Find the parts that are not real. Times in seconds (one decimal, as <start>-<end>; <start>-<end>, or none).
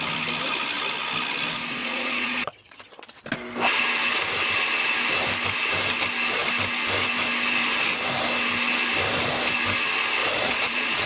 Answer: 1.8-3.2; 10.2-11.1